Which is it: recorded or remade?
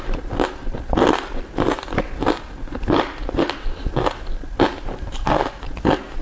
recorded